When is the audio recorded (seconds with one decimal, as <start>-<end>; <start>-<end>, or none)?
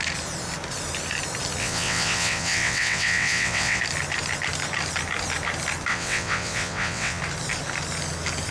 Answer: 0.0-1.6; 3.8-5.9; 7.2-8.5